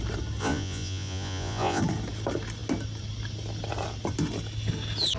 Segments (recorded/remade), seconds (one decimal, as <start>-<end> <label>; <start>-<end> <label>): 0.0-0.4 recorded; 0.4-1.8 remade; 1.8-5.2 recorded